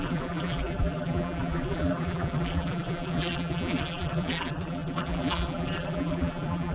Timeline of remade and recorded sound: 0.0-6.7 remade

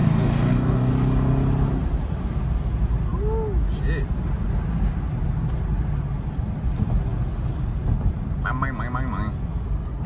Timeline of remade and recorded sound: 0.0-0.9 remade; 0.9-10.1 recorded

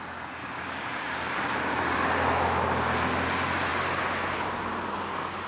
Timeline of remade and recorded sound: 0.0-0.4 recorded; 0.4-2.1 remade; 2.1-5.5 recorded

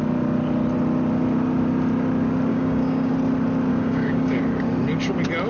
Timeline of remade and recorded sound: 0.0-2.5 recorded; 2.5-3.1 remade; 3.1-3.7 recorded; 3.7-4.4 remade; 4.4-5.5 recorded

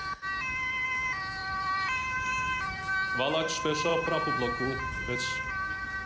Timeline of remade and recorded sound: 0.0-1.4 recorded; 1.4-2.8 remade; 2.8-6.1 recorded

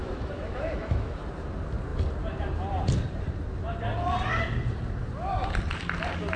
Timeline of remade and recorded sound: 0.0-1.2 remade; 1.2-6.4 recorded

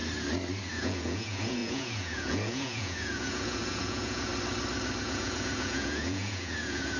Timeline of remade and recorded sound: 0.0-0.7 recorded; 0.7-4.3 remade; 4.3-5.0 recorded; 5.0-7.0 remade